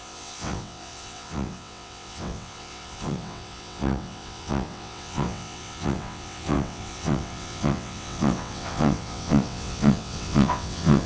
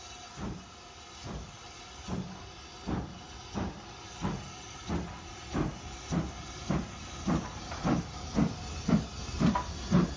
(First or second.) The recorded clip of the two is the second